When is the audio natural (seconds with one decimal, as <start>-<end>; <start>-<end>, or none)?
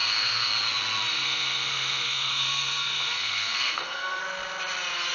0.5-1.1; 4.2-5.1